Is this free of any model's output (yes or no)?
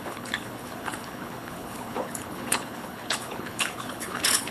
no